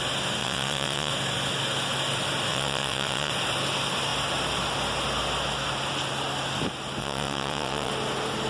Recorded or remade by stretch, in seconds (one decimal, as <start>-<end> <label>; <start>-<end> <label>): 0.0-0.4 recorded; 0.4-1.1 remade; 1.1-2.5 recorded; 2.5-3.3 remade; 3.3-7.0 recorded; 7.0-7.9 remade; 7.9-8.5 recorded